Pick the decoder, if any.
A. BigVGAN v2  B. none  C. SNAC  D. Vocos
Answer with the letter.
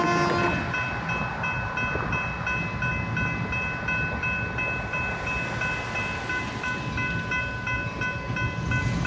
B